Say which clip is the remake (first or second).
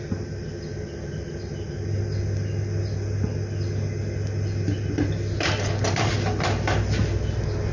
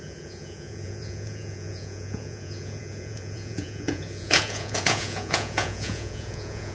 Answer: second